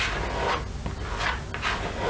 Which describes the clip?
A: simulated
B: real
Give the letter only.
B